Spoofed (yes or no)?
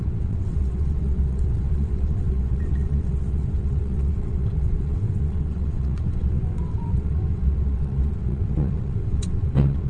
yes